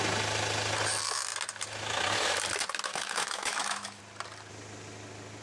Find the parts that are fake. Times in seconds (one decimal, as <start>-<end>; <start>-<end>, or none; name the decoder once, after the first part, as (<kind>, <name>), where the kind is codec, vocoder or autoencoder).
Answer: 2.9-4.0 (autoencoder, DAC-VAE)